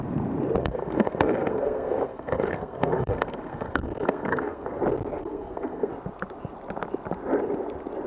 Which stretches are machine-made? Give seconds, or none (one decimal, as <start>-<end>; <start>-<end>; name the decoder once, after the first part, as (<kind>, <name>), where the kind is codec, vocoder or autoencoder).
0.6-4.8 (codec, SNAC); 5.2-5.9